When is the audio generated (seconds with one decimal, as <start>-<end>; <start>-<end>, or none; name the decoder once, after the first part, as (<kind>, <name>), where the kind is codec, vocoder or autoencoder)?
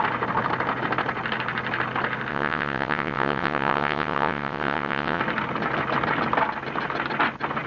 2.3-5.2 (vocoder, WaveNeXt)